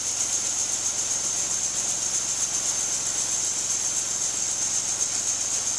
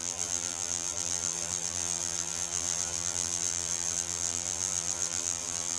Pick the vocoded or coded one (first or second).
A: second